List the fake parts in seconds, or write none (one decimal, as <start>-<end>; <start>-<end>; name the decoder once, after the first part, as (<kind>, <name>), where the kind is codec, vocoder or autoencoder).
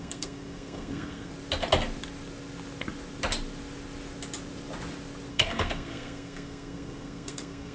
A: 0.0-1.3 (codec, SNAC); 5.3-7.7